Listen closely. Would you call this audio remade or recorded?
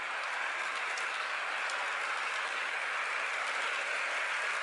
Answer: recorded